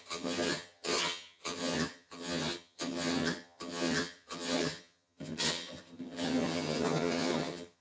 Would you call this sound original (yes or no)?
no